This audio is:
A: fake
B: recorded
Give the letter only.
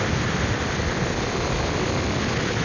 B